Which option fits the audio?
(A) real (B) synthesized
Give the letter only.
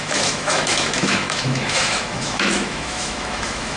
B